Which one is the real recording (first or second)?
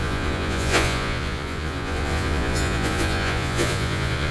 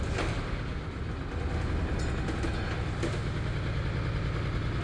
second